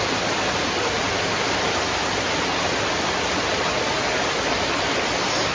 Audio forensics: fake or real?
real